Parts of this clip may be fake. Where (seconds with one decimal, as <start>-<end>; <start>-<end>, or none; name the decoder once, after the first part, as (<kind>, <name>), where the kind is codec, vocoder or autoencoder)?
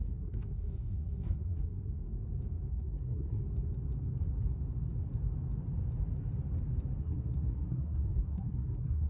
0.0-1.9 (codec, SNAC); 2.7-3.4; 7.0-9.1